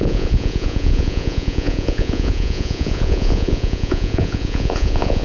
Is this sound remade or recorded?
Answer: remade